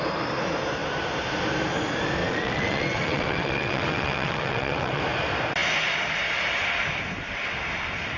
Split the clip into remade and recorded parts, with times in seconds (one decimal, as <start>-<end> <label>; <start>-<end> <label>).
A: 0.0-2.2 recorded; 2.2-5.0 remade; 5.0-8.2 recorded